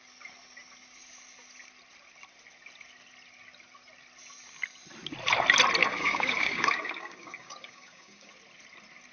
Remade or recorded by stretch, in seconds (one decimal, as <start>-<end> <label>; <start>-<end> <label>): 0.0-5.8 recorded; 5.8-8.3 remade; 8.3-9.1 recorded